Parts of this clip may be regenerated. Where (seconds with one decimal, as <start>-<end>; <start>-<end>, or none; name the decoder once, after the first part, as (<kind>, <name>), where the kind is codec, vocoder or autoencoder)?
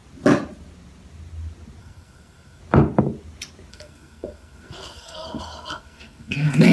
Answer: 1.8-2.6 (codec, SNAC); 3.7-6.7